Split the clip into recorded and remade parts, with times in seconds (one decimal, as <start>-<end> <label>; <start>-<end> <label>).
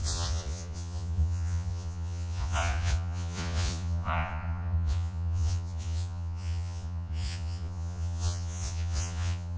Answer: 0.0-9.6 remade